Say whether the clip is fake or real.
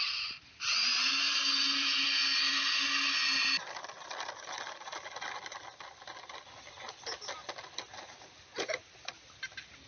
real